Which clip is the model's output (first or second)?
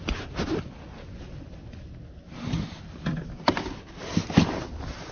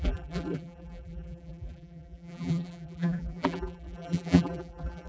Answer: second